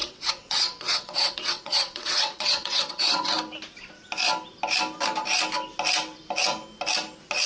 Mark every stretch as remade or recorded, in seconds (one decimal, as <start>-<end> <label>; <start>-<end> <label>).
0.0-3.3 remade; 3.3-7.5 recorded